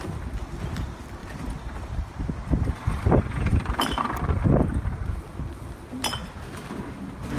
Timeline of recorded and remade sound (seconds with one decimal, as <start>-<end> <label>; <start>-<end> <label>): 0.0-1.2 recorded; 1.2-2.0 remade; 2.0-3.5 recorded; 3.5-4.3 remade; 4.3-7.4 recorded